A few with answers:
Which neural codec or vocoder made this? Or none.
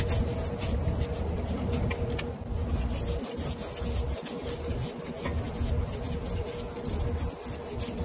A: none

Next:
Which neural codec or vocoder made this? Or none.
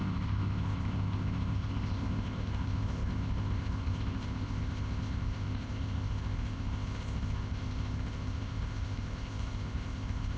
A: codec, ZipCodec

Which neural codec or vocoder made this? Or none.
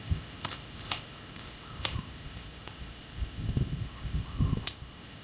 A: codec, ZipCodec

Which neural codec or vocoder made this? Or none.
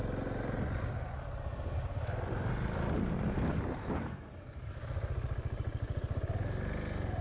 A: none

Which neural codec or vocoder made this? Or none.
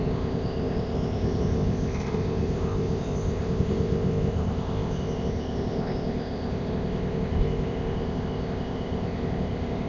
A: codec, ZipCodec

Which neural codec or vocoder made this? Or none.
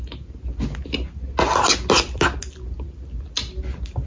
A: none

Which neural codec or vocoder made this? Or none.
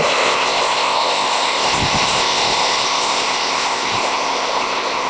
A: codec, ZipCodec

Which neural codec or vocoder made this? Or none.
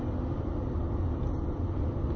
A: none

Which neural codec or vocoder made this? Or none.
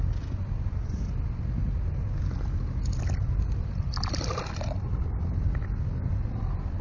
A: none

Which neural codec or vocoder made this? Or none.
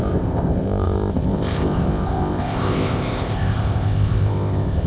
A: codec, ZipCodec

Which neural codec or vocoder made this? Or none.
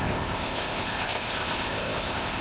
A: codec, ZipCodec